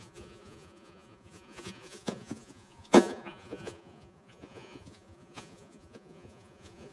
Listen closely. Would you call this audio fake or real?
fake